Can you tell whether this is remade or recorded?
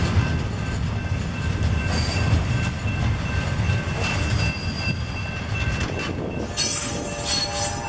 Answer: recorded